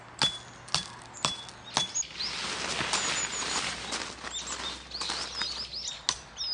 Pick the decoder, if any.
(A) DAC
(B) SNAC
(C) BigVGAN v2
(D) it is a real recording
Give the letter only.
D